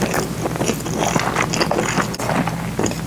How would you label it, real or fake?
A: real